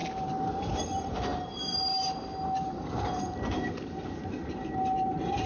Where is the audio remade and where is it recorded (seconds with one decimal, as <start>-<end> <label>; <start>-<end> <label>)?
0.0-5.5 recorded